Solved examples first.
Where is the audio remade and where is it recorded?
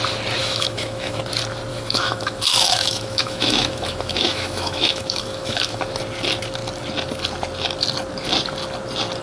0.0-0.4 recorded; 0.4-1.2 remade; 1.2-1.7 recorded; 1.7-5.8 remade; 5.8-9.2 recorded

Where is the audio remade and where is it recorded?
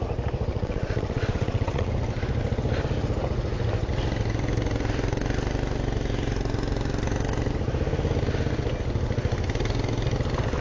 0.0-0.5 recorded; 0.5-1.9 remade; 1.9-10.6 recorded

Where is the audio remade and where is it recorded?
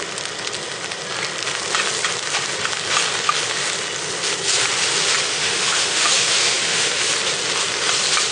0.0-5.3 recorded; 5.3-7.1 remade; 7.1-8.3 recorded